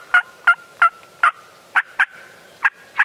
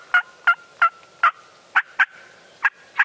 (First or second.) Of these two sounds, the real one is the second